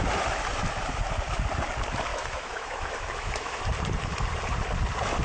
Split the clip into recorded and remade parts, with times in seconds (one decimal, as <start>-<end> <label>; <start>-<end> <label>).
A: 0.0-2.1 recorded; 2.1-3.6 remade; 3.6-5.2 recorded